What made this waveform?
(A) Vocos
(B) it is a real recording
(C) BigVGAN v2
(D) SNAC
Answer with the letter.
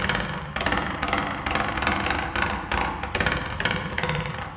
B